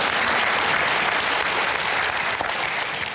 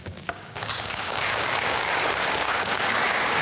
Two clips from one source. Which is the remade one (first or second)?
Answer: second